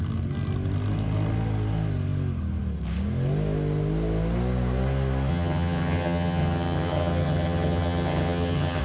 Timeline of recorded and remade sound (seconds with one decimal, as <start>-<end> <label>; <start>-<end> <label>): 0.0-5.3 recorded; 5.3-8.8 remade